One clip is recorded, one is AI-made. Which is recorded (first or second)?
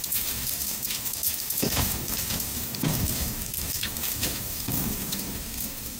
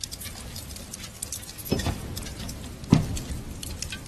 second